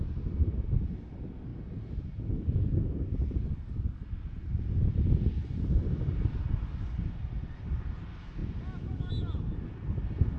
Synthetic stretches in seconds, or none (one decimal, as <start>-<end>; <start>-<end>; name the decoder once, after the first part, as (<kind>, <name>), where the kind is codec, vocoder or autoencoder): none